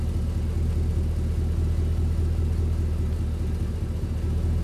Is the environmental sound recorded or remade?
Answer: recorded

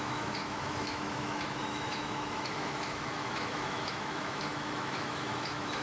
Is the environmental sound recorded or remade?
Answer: remade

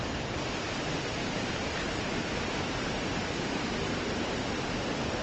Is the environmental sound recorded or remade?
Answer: recorded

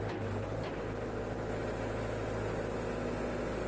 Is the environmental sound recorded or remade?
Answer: recorded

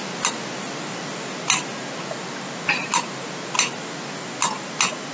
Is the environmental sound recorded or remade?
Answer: recorded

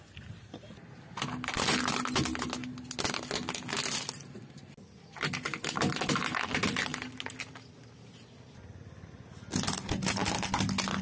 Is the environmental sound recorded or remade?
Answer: recorded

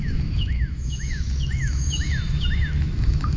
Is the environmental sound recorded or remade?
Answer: remade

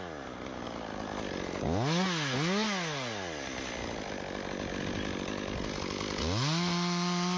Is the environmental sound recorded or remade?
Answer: recorded